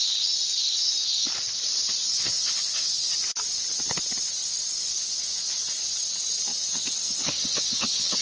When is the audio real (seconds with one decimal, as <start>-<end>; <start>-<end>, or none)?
0.0-2.0; 3.1-4.4; 5.7-6.5